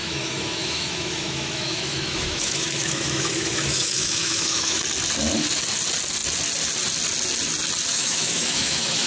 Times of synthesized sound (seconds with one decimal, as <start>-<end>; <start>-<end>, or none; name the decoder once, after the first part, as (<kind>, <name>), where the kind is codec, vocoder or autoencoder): 0.0-4.8 (autoencoder, DAC-VAE); 7.9-9.1